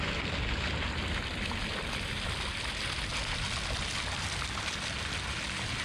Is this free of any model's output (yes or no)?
yes